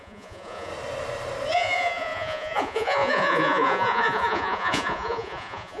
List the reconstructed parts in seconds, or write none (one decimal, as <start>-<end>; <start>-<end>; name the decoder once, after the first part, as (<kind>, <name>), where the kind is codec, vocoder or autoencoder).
0.0-0.7 (vocoder, Vocos); 1.5-5.8